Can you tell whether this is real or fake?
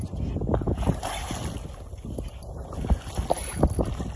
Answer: real